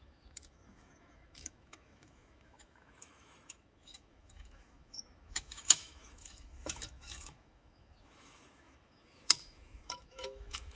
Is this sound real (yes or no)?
no